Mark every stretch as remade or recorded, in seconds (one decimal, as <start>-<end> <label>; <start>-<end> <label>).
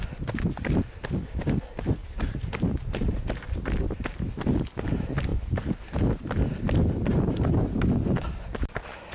0.0-2.0 recorded; 2.0-3.2 remade; 3.2-5.3 recorded; 5.3-6.2 remade; 6.2-7.1 recorded; 7.1-8.5 remade; 8.5-9.1 recorded